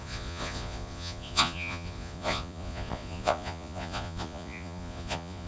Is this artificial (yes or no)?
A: yes